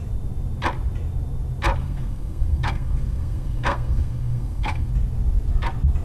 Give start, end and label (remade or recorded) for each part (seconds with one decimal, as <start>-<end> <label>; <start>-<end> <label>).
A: 0.0-1.8 recorded; 1.8-4.9 remade; 4.9-6.0 recorded